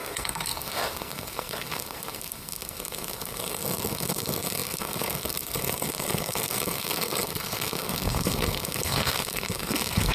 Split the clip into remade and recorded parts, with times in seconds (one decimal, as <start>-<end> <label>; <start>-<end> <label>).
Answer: 0.0-10.1 remade